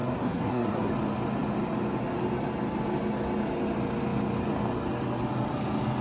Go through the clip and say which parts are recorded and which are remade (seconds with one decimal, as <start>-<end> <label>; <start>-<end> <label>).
0.0-0.9 remade; 0.9-6.0 recorded